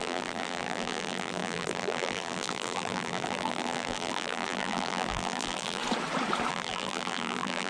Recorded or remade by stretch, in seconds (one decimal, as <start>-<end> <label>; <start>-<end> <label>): 0.0-5.8 remade; 5.8-6.5 recorded; 6.5-7.7 remade